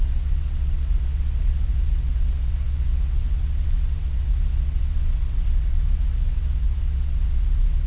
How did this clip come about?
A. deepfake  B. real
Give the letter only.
A